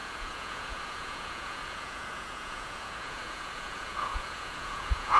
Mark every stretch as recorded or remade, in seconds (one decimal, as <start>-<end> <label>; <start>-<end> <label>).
0.0-5.2 remade